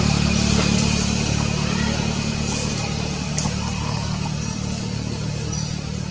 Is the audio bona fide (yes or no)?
yes